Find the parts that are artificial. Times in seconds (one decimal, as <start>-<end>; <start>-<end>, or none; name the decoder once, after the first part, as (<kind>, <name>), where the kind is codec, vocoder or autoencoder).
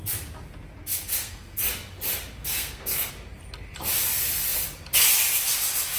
1.0-1.6 (codec, SNAC); 2.4-3.1